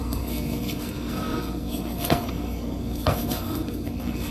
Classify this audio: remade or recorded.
remade